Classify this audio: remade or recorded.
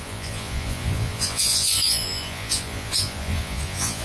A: remade